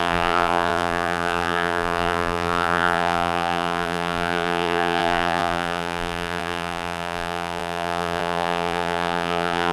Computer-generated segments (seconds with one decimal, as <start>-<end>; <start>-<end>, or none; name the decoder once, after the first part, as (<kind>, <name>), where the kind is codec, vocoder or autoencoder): 0.0-9.7 (vocoder, BigVGAN v2)